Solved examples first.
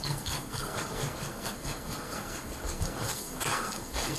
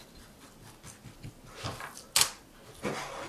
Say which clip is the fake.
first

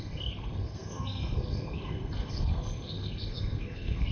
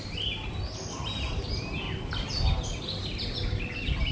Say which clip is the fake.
first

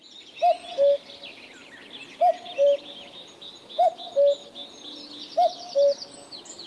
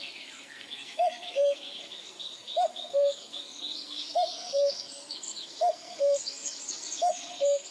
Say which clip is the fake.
second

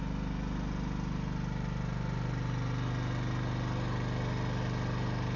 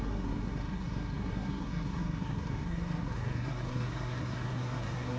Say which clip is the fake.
second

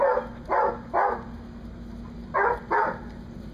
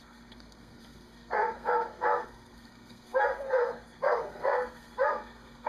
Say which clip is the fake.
second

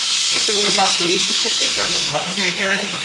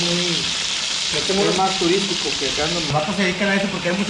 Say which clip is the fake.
first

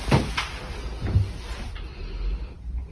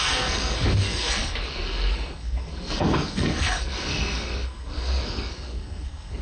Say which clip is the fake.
second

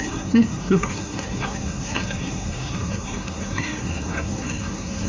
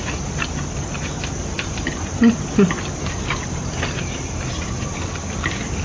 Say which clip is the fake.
first